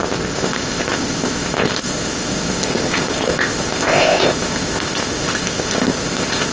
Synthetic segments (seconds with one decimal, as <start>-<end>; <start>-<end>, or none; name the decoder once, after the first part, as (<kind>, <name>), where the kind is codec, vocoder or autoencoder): 0.0-6.5 (codec, ZipCodec)